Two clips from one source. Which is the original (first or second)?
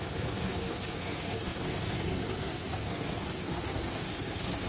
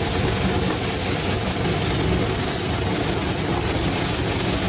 second